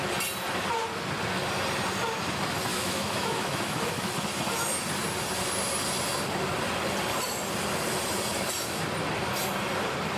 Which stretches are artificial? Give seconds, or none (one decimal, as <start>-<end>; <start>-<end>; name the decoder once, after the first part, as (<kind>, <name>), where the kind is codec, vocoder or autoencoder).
2.7-4.1 (autoencoder, DAC-VAE)